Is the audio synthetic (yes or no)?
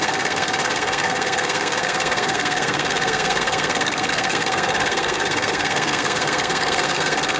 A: yes